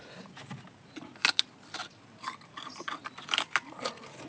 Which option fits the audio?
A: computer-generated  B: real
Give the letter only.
B